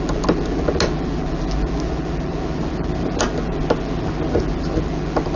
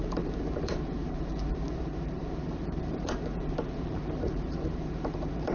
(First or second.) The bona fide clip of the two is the first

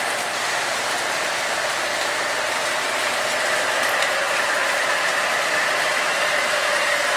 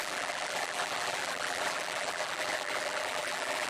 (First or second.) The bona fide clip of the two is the first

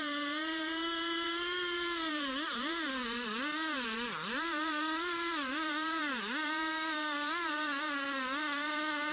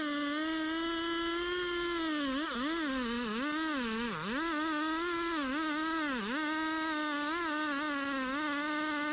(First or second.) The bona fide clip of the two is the second